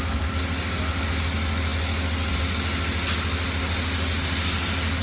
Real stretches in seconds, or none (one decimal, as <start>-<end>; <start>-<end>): 0.0-5.0